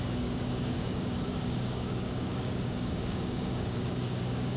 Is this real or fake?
fake